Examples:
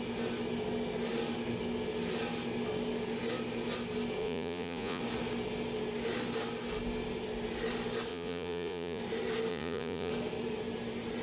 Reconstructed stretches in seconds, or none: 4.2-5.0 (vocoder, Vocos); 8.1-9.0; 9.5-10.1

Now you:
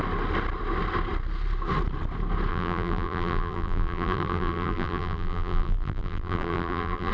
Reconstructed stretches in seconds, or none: 2.5-7.1 (vocoder, BigVGAN v2)

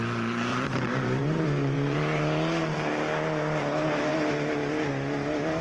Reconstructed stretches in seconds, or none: 0.5-2.6 (vocoder, BigVGAN v2)